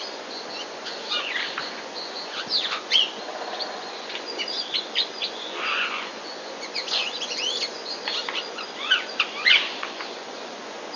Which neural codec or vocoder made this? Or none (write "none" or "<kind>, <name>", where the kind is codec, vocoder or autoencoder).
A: vocoder, Vocos